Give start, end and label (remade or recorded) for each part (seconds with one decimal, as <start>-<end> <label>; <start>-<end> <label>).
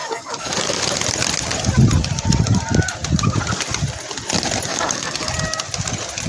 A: 0.0-0.8 remade; 0.8-4.7 recorded; 4.7-5.3 remade; 5.3-6.3 recorded